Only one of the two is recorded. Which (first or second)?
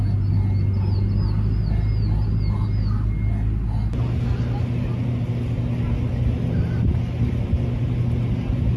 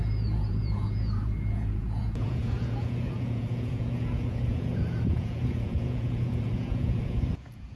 first